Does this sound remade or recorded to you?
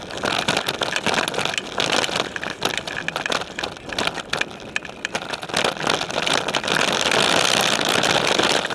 recorded